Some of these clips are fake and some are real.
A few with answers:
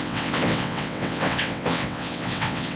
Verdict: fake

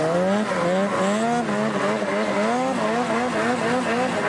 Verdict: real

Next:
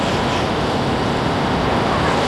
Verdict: real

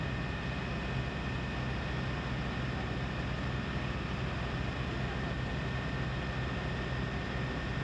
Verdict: real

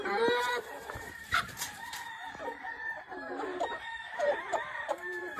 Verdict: fake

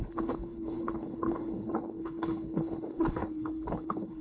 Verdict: fake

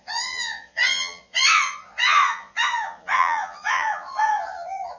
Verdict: fake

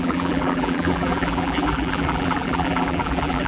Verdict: fake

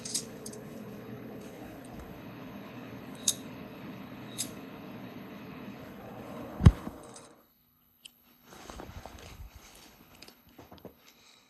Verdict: fake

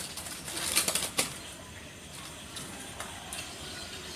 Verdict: real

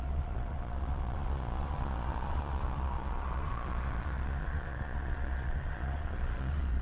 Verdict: fake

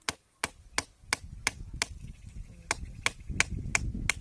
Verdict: real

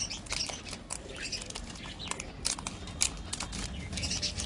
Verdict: real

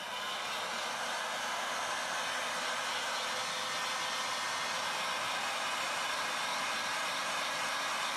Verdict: real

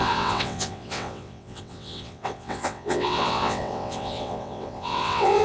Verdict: fake